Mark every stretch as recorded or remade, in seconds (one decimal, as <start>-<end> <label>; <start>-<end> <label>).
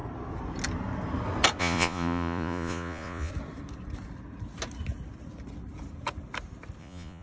0.0-1.6 recorded; 1.6-3.3 remade; 3.3-6.8 recorded; 6.8-7.2 remade